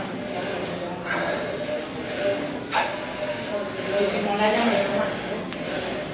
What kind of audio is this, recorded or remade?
recorded